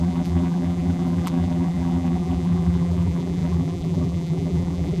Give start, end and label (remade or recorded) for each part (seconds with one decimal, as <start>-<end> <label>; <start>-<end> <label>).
0.0-5.0 remade